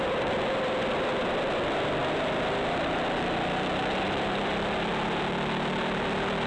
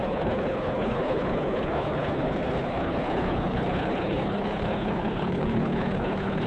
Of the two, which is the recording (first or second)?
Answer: first